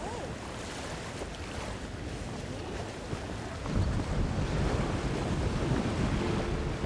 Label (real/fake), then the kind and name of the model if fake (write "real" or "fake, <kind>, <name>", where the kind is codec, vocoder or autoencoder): real